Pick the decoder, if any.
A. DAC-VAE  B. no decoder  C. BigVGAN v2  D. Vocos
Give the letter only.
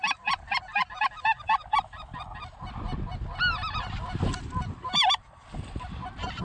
B